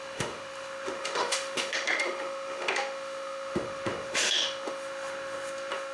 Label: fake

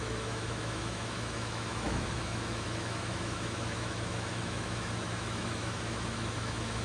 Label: fake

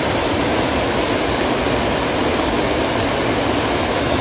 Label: real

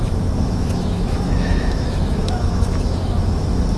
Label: fake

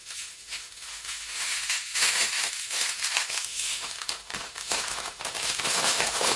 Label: fake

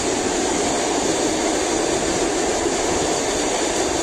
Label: real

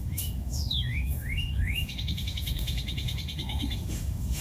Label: fake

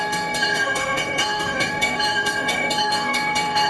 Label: fake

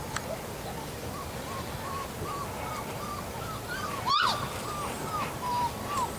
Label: real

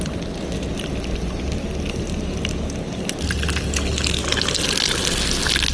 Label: real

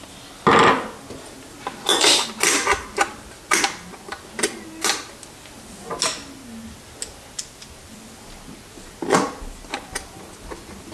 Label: real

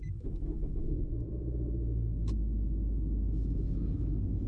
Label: fake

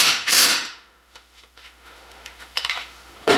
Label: fake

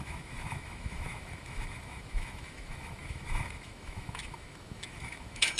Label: fake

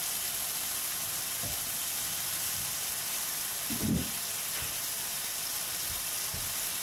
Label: real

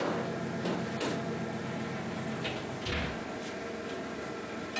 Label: real